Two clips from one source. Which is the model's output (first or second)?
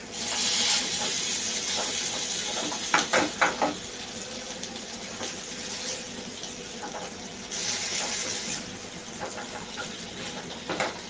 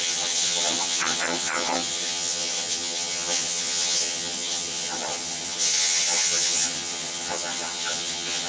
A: second